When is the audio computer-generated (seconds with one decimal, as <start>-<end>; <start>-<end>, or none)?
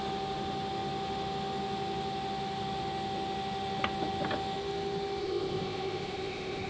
5.2-6.7